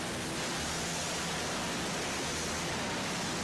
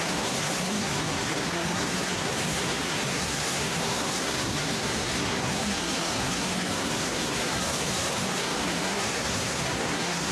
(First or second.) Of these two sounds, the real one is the first